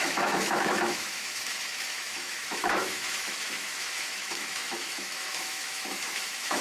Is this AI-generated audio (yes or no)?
yes